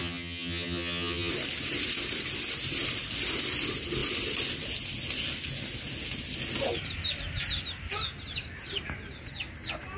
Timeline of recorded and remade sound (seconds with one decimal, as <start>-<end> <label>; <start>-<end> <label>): 0.0-1.3 remade; 1.3-10.0 recorded